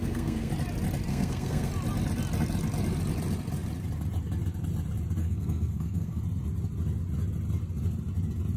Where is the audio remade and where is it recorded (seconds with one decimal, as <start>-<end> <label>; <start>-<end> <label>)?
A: 0.0-0.5 remade; 0.5-1.1 recorded; 1.1-1.7 remade; 1.7-5.2 recorded; 5.2-6.2 remade; 6.2-8.6 recorded